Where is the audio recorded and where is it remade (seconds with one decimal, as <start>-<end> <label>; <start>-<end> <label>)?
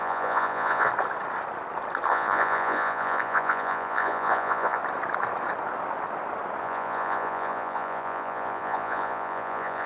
0.0-0.9 remade; 0.9-2.1 recorded; 2.1-4.8 remade; 4.8-6.6 recorded; 6.6-9.9 remade